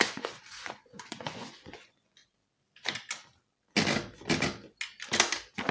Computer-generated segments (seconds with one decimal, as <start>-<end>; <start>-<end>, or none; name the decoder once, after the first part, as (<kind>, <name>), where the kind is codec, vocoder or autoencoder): 0.0-2.2 (vocoder, Vocos)